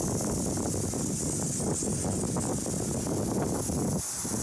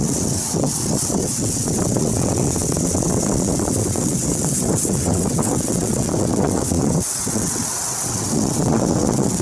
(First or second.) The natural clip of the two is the first